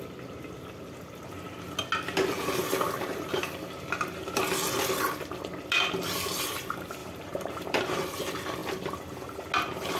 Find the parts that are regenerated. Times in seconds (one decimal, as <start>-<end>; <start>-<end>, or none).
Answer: 7.0-7.8